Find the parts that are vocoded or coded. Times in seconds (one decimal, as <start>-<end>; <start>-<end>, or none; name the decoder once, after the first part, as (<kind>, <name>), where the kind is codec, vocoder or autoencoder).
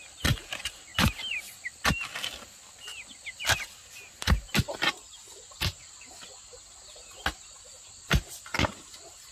7.5-8.5 (vocoder, BigVGAN v2)